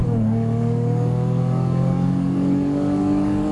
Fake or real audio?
fake